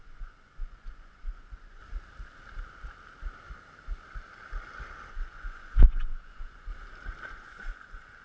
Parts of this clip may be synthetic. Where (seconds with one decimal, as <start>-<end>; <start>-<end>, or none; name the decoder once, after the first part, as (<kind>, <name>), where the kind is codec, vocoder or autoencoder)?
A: 0.0-1.8 (vocoder, Vocos); 5.1-6.7; 7.3-8.2